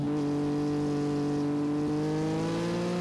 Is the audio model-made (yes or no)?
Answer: no